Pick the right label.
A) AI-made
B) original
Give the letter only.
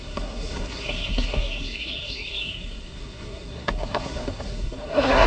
A